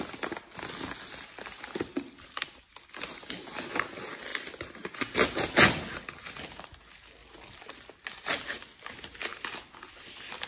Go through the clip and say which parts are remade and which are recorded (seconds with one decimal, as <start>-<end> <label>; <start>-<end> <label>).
0.0-10.5 recorded